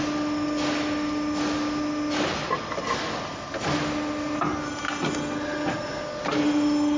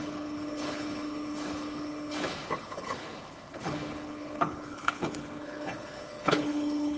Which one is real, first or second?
first